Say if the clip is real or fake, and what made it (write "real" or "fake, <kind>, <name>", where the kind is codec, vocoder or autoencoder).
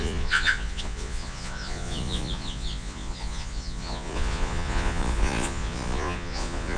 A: fake, vocoder, Vocos